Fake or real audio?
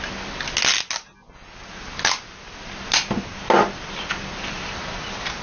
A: real